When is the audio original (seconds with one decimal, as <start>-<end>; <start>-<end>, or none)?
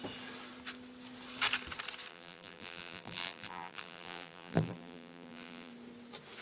0.0-2.1; 5.7-6.4